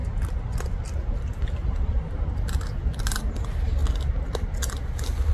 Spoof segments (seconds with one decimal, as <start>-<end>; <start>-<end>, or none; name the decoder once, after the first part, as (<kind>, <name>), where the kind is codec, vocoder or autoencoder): none